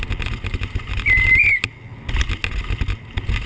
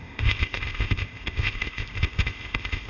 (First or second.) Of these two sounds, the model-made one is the second